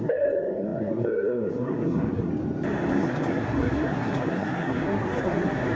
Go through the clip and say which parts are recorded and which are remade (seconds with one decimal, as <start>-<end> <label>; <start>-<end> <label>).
0.0-2.3 remade; 2.3-2.9 recorded; 2.9-5.7 remade